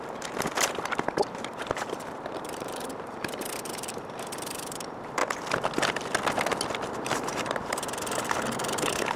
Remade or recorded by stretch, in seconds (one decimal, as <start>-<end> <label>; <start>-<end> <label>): 0.0-5.2 remade; 5.2-6.8 recorded; 6.8-9.2 remade